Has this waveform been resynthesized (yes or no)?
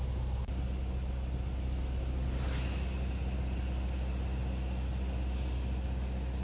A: no